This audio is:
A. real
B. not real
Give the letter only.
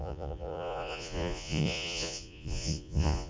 B